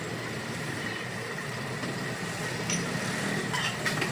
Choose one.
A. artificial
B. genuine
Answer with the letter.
A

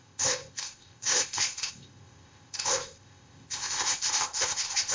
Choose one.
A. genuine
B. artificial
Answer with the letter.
B